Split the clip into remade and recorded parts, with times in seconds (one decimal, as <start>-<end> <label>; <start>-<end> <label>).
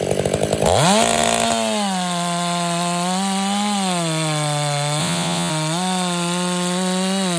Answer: 0.0-5.0 recorded; 5.0-5.5 remade; 5.5-7.4 recorded